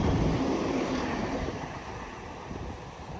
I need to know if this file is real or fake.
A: real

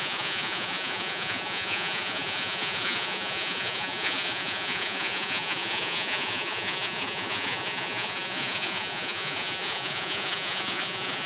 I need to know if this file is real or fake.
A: fake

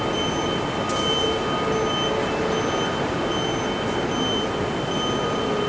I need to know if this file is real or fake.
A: real